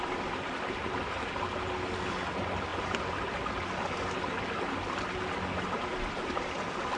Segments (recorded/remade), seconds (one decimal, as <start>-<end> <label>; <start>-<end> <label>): 0.0-7.0 recorded